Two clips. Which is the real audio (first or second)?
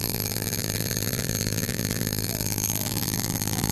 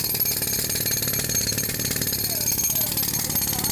second